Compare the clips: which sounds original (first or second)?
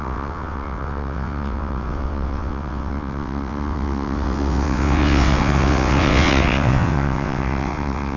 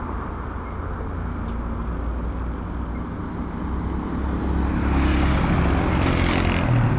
second